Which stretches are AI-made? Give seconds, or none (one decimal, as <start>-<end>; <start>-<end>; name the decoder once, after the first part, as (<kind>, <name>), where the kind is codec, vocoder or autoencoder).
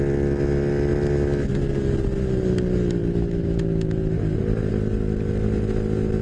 3.0-4.2 (autoencoder, DAC-VAE)